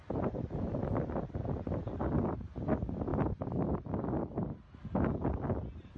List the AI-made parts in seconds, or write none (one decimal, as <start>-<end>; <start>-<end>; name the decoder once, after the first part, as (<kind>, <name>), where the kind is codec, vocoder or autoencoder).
0.0-0.6 (vocoder, BigVGAN v2); 3.1-4.2